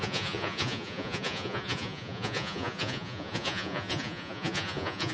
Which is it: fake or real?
fake